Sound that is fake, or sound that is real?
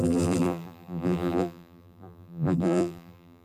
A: fake